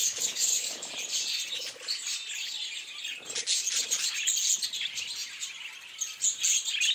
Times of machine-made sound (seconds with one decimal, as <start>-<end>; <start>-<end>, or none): 0.0-0.9